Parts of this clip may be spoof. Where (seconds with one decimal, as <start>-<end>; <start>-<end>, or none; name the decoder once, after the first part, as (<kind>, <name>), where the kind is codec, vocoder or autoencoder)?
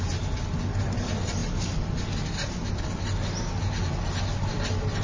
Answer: none